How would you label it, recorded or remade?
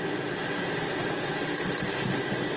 recorded